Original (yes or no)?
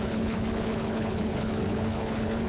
no